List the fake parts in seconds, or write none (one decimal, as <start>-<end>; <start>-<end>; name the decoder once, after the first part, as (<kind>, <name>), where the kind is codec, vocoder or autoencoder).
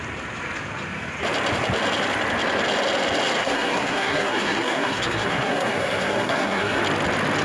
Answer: 3.4-6.8 (codec, SNAC)